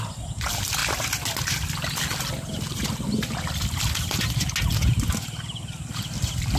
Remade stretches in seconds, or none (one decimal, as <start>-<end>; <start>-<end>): none